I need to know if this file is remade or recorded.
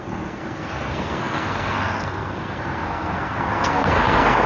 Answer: remade